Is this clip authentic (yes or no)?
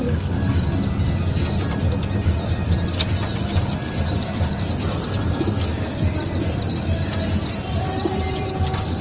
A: yes